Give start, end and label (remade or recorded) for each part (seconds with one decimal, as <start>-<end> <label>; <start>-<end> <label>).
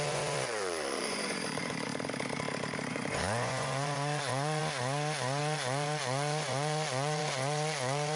0.0-1.9 remade; 1.9-2.9 recorded; 2.9-4.6 remade; 4.6-5.4 recorded; 5.4-8.2 remade